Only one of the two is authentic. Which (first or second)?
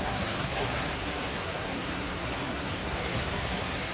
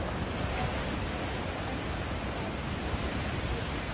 second